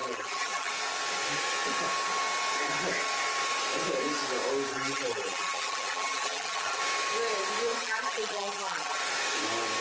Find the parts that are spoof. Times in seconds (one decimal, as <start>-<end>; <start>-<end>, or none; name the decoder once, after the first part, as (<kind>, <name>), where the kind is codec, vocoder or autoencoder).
0.0-0.7 (vocoder, BigVGAN v2); 4.7-6.8; 7.8-9.0